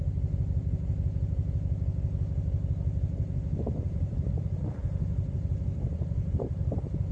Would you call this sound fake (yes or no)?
no